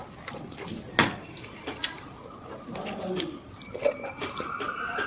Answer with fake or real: real